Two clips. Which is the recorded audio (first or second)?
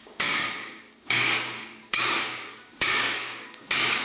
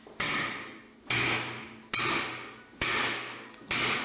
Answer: second